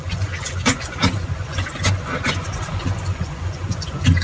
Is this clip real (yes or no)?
no